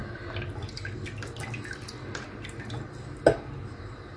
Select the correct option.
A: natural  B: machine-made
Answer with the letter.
A